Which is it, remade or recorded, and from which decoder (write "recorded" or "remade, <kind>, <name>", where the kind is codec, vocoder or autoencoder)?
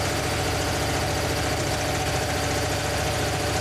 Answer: recorded